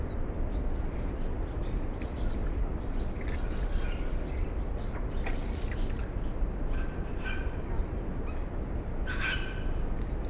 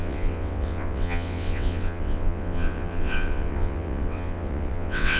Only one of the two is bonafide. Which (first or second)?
first